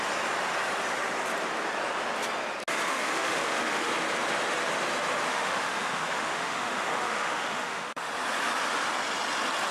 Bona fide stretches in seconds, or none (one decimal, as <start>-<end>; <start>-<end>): 0.0-2.9; 3.9-5.3; 8.1-9.7